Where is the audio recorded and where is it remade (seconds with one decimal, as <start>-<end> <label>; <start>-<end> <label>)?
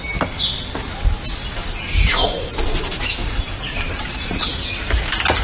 0.0-1.4 recorded; 1.4-4.6 remade; 4.6-5.4 recorded